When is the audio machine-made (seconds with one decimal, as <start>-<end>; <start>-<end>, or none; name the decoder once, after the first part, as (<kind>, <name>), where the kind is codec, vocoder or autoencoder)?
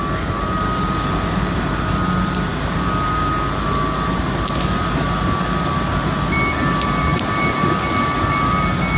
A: none